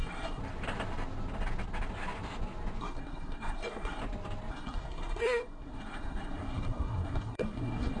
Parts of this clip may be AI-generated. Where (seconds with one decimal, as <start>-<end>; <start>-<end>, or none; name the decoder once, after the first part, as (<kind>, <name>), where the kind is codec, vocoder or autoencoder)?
0.0-0.4 (codec, SNAC); 2.8-4.0; 4.5-8.0